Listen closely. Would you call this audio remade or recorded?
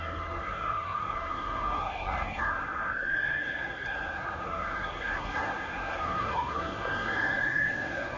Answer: remade